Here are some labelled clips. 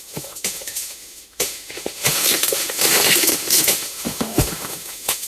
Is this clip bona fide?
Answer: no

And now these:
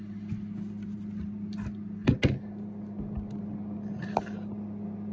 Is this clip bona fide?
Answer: yes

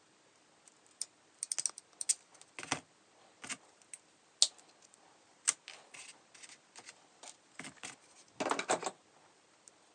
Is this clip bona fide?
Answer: yes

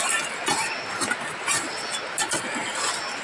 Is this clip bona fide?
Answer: yes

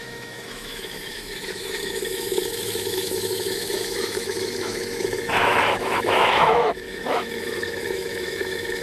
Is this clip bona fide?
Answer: no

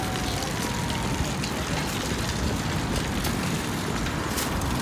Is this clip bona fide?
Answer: yes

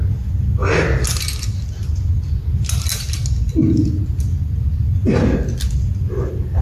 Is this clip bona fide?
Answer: yes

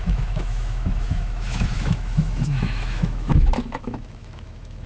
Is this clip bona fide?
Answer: no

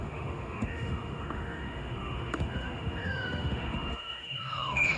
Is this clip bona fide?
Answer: no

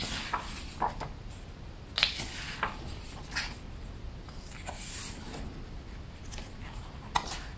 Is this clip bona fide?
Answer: yes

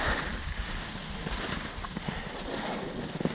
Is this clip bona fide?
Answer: yes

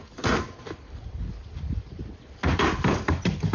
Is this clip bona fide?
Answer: yes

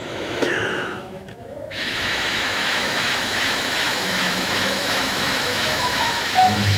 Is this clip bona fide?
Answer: no